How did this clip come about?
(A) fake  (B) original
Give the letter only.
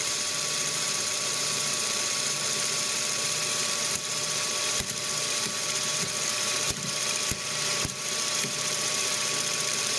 A